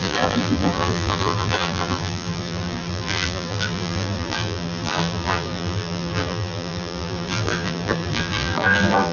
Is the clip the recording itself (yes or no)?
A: no